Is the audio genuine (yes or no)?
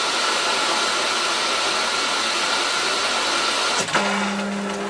yes